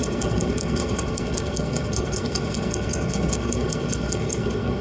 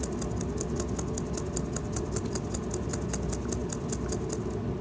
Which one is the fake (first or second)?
first